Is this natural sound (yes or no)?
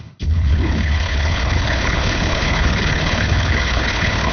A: no